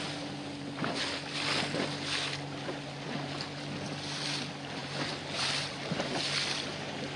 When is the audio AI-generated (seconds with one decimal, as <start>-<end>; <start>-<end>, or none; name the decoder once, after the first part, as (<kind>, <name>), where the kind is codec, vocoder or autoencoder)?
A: 4.8-6.1 (vocoder, BigVGAN v2)